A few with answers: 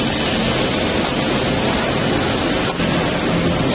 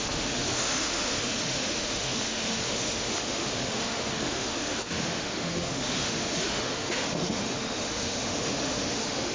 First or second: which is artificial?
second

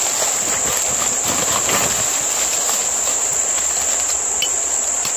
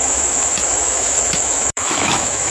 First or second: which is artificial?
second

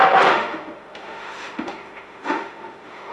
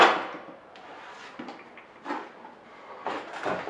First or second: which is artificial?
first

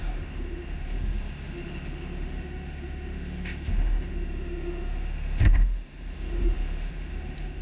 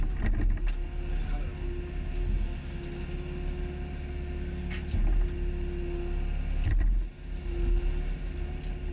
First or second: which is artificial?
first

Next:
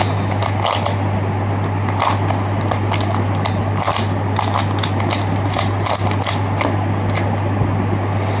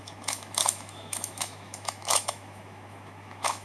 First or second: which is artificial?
second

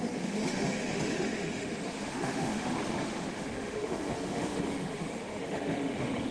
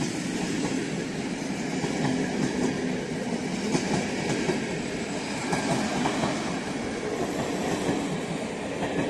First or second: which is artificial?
first